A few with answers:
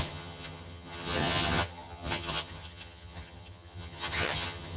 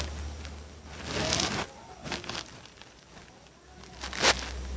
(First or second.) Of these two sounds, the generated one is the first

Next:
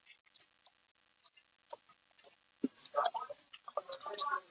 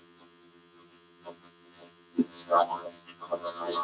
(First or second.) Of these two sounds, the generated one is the second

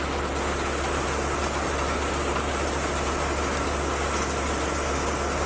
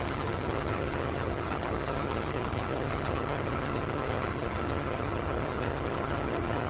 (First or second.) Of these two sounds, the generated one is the second